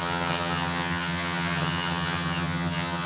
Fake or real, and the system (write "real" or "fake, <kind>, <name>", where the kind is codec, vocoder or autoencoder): fake, vocoder, HiFi-GAN